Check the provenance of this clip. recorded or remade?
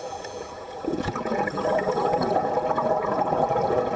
remade